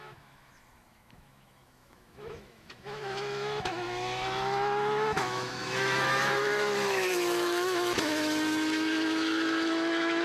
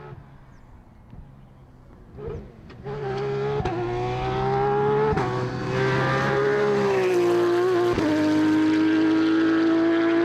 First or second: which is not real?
first